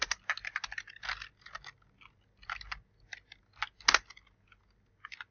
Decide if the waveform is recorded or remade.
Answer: recorded